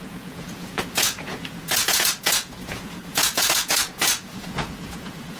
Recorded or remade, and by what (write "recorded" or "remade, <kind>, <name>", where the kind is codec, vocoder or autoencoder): remade, vocoder, Vocos